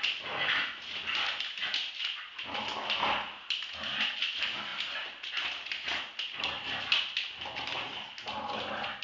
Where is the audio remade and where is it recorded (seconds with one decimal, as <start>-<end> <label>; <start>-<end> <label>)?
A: 0.0-9.0 recorded